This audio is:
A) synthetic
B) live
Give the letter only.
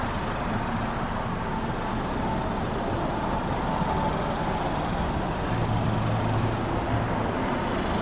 B